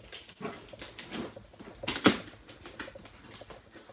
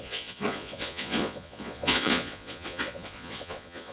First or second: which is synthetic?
second